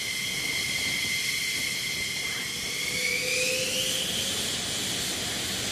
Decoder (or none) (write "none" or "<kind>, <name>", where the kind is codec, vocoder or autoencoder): none